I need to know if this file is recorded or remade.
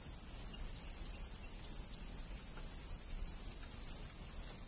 recorded